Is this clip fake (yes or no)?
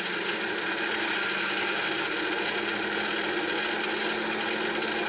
no